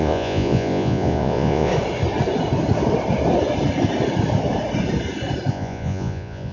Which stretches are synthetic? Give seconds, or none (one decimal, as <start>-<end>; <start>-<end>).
0.0-1.7; 5.5-6.5